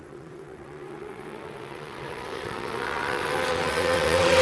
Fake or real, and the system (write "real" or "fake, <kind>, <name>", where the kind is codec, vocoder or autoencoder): fake, vocoder, WaveNeXt